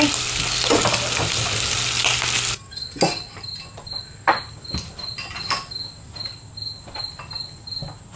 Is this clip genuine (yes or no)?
yes